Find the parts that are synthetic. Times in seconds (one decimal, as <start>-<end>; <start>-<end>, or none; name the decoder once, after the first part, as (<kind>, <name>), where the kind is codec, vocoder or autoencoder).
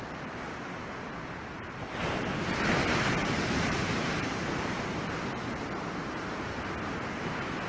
3.2-4.9 (vocoder, BigVGAN v2); 6.0-6.5